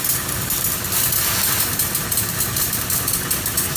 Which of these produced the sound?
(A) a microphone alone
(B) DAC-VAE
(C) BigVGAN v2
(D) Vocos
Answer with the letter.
C